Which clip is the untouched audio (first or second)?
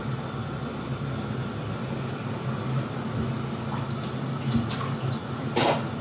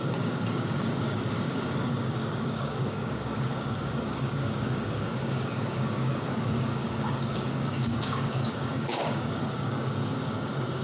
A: first